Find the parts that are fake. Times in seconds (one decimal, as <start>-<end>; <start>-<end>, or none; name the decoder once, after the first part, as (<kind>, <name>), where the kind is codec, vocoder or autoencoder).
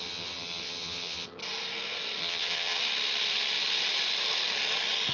0.0-1.4 (vocoder, HiFi-GAN); 2.2-2.8